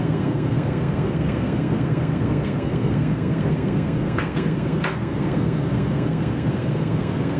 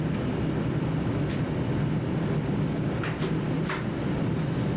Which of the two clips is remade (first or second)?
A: first